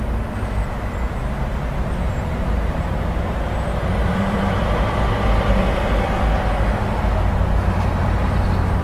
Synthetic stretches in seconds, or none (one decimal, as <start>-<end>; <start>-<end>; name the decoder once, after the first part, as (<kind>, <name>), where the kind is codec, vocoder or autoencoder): 4.0-5.1 (vocoder, BigVGAN v2)